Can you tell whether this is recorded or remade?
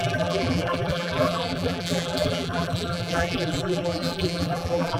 remade